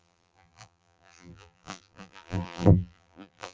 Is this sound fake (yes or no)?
yes